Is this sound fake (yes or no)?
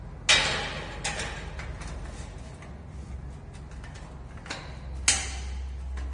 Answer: no